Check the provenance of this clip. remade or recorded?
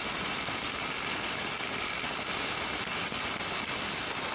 recorded